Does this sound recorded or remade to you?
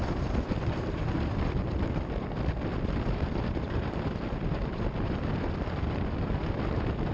remade